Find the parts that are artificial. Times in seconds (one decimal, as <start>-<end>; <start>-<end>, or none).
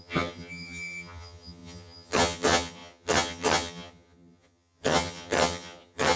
0.0-6.2